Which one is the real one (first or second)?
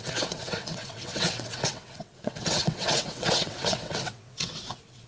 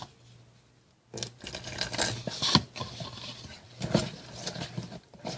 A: second